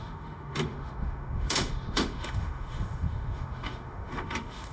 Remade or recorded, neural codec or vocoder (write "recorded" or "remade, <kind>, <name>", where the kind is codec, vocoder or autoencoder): remade, autoencoder, DAC-VAE